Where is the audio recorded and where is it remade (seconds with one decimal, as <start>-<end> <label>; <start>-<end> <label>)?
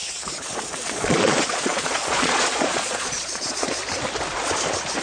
0.0-0.6 recorded; 0.6-3.8 remade; 3.8-5.0 recorded